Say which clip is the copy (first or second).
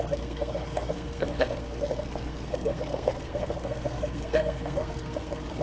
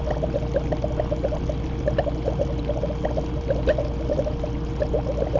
first